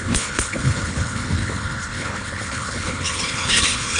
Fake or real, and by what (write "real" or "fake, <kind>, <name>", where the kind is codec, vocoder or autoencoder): fake, codec, HILCodec